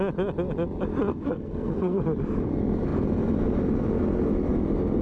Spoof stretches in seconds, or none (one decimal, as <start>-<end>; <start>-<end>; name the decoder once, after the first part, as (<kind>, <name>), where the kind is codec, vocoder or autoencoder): 1.1-2.0 (codec, SNAC)